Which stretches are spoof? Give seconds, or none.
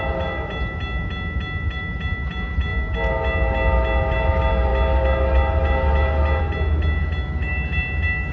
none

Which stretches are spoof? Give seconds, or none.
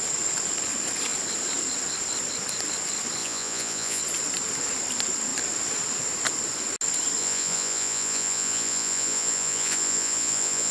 3.2-4.0 (vocoder, Vocos); 7.2-10.7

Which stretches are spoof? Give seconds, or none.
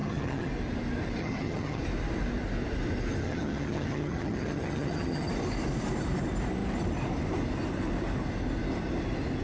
0.0-0.5 (vocoder, HiFi-GAN); 1.2-1.8; 3.2-5.3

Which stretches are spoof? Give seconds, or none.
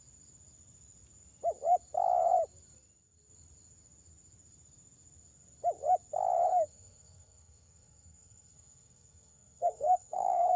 6.5-10.6 (codec, SNAC)